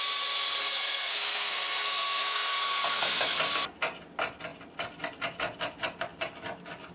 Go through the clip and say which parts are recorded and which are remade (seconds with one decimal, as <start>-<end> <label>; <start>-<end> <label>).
0.0-0.6 recorded; 0.6-3.4 remade; 3.4-6.9 recorded